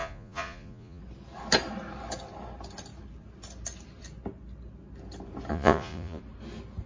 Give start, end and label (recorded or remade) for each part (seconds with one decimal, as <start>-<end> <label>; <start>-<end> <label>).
0.0-1.0 remade; 1.0-5.5 recorded; 5.5-6.2 remade; 6.2-6.9 recorded